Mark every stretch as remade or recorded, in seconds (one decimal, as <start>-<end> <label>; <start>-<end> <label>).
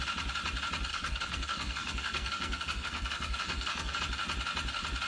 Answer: 0.0-0.9 recorded; 0.9-4.0 remade; 4.0-5.1 recorded